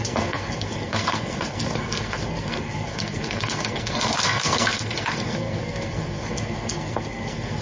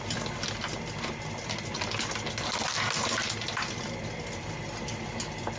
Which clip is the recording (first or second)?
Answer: second